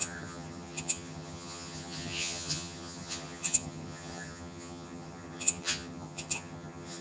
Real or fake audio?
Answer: fake